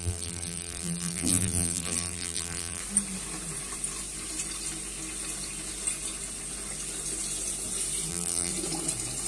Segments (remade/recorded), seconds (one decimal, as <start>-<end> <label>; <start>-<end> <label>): 0.0-2.8 remade; 2.8-8.1 recorded; 8.1-8.5 remade; 8.5-9.3 recorded